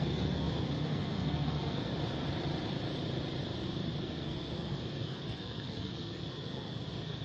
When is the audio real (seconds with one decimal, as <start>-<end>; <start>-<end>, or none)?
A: 1.9-4.0